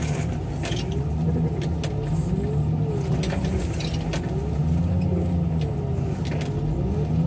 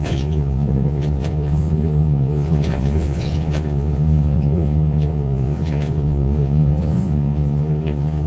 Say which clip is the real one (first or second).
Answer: first